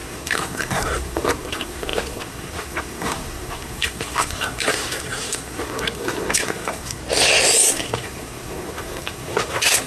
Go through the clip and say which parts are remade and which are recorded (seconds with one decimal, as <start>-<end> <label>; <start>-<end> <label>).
0.0-7.0 remade; 7.0-7.7 recorded; 7.7-9.9 remade